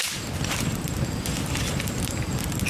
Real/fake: real